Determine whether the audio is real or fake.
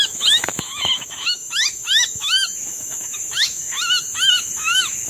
fake